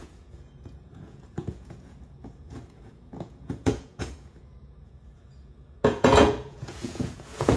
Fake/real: fake